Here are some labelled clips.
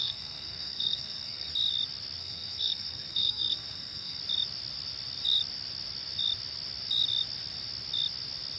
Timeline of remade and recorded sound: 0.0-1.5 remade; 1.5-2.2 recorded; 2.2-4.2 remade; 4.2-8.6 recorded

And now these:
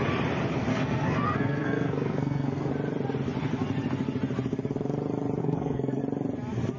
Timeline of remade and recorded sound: 0.0-0.7 recorded; 0.7-2.7 remade; 2.7-5.4 recorded; 5.4-6.0 remade; 6.0-6.8 recorded

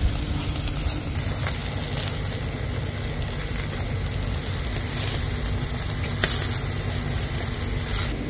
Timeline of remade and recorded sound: 0.0-8.3 recorded

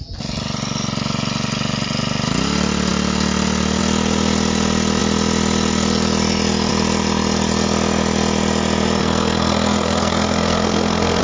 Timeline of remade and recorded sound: 0.0-9.0 recorded; 9.0-11.2 remade